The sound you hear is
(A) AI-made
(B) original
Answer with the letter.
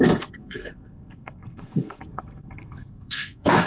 A